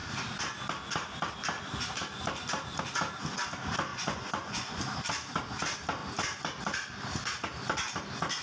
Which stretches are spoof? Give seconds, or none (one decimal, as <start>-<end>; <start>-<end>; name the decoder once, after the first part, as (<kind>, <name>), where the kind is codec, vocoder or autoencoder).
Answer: 3.9-4.8 (vocoder, Vocos)